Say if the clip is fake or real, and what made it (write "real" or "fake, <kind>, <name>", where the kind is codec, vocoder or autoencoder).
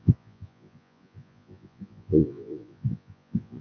fake, vocoder, Vocos